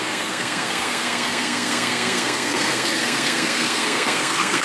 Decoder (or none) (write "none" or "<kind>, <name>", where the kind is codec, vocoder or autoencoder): codec, SNAC